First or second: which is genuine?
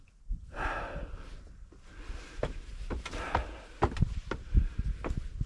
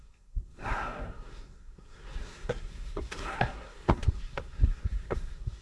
first